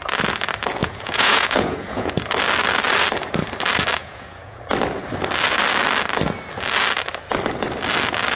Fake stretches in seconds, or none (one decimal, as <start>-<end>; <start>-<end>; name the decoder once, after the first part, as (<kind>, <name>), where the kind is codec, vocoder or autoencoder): 0.8-2.1 (vocoder, Vocos); 4.0-4.6